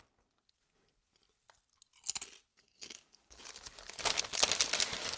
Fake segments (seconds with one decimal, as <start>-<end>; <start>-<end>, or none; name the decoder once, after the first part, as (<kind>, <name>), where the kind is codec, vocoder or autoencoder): 2.5-3.4 (codec, DAC)

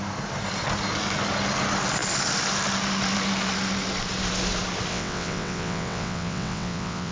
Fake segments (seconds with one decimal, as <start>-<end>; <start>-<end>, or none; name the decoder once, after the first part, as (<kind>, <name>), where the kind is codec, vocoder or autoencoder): 4.9-7.1 (vocoder, WaveNeXt)

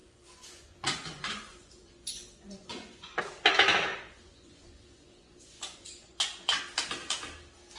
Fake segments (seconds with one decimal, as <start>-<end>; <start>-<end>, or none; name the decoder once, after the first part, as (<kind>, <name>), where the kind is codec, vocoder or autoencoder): 0.0-3.2 (vocoder, Vocos); 3.9-6.6

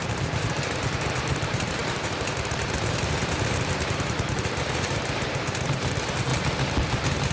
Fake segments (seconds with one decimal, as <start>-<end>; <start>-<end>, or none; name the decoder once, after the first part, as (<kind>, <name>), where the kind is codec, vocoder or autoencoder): 0.0-6.3 (vocoder, BigVGAN v2)